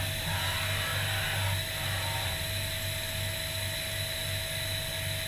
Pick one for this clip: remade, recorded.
recorded